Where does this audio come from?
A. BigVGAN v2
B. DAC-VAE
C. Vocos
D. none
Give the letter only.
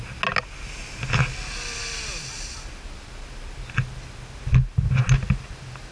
D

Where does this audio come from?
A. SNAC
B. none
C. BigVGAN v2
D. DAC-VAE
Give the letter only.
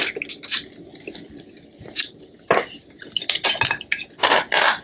B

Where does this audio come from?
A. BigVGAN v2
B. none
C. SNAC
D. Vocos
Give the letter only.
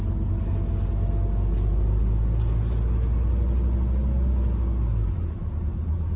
B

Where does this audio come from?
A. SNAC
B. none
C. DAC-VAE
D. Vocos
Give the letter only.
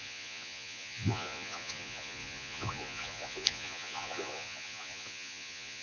D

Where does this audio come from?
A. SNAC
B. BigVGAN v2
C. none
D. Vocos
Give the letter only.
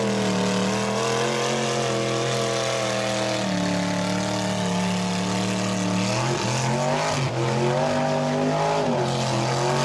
C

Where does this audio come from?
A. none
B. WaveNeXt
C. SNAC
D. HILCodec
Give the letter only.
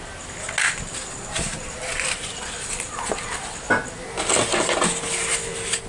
A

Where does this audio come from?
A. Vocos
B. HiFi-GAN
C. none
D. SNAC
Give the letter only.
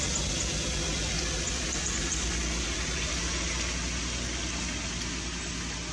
C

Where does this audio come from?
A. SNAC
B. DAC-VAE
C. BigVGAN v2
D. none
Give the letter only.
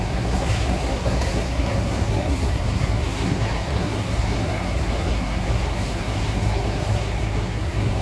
A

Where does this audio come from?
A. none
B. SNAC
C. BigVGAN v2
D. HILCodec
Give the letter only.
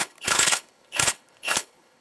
D